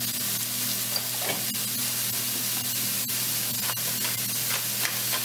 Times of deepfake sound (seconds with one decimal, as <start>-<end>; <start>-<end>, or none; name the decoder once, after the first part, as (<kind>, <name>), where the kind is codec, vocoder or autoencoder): none